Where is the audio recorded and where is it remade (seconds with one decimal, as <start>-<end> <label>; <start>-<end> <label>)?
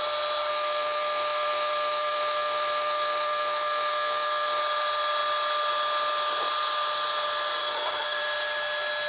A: 0.0-0.5 recorded; 0.5-4.6 remade; 4.6-7.6 recorded; 7.6-8.2 remade; 8.2-9.1 recorded